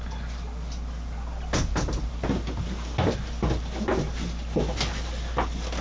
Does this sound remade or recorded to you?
recorded